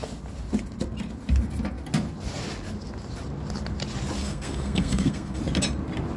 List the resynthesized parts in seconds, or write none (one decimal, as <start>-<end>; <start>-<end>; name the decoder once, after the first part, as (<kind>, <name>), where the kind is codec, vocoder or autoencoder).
4.2-5.4 (codec, SNAC)